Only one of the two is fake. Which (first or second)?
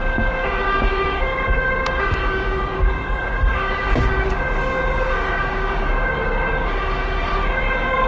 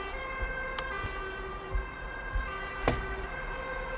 first